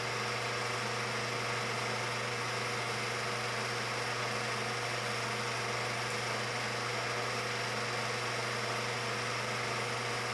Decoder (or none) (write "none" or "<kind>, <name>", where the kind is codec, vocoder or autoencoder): none